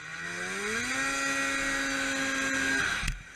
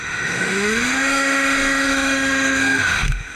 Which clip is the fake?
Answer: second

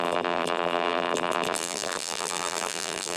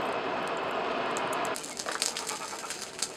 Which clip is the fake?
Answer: first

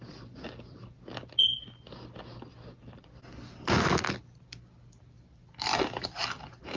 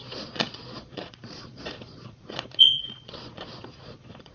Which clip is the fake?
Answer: second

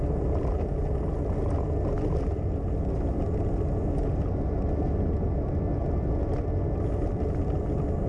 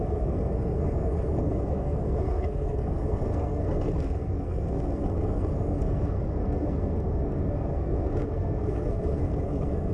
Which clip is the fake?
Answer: second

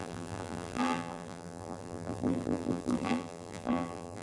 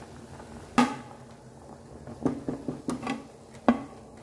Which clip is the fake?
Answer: first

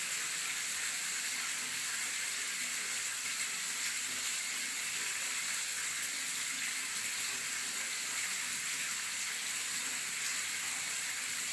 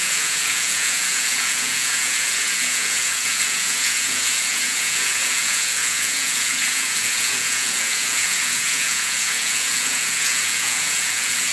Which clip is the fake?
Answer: second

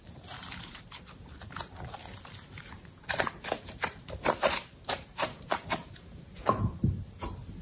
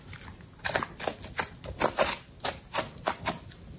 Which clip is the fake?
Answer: first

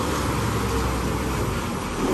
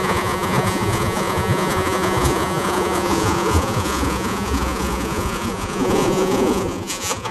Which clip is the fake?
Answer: second